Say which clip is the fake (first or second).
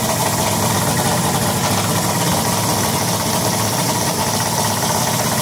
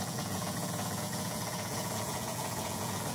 second